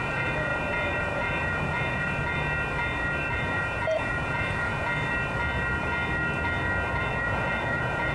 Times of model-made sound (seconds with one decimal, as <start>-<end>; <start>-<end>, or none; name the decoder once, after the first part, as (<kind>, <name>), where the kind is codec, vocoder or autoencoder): 0.0-0.5 (vocoder, Vocos); 1.0-2.2; 3.3-4.9; 6.9-8.1